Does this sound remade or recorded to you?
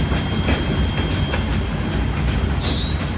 recorded